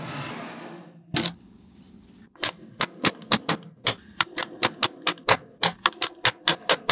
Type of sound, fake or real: real